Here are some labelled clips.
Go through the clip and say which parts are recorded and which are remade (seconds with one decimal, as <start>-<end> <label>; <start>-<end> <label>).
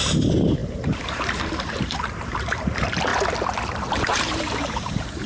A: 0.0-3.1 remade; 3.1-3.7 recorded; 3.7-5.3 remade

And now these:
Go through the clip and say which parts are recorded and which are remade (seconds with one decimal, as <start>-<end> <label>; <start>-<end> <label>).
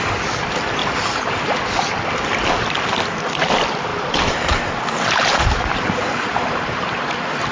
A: 0.0-0.8 recorded; 0.8-1.7 remade; 1.7-3.9 recorded; 3.9-7.5 remade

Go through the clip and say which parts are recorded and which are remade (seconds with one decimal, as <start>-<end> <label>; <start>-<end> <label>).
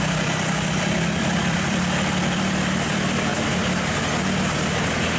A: 0.0-3.3 remade; 3.3-5.2 recorded